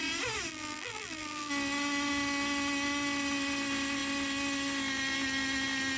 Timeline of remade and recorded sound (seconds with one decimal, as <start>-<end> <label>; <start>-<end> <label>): 0.0-0.5 recorded; 0.5-1.5 remade; 1.5-6.0 recorded